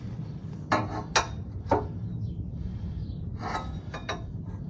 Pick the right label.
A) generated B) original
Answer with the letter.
B